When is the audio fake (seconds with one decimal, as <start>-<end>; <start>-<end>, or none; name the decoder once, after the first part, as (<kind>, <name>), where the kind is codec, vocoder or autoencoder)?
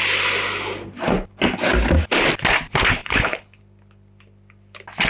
3.0-3.6 (codec, HILCodec)